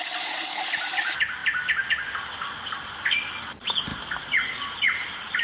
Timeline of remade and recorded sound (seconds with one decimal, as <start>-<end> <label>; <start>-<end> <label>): 0.0-5.4 recorded